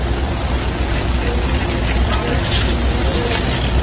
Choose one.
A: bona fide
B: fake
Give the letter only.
A